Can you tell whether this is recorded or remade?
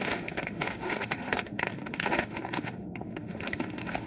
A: remade